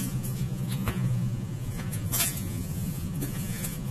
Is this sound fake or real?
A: fake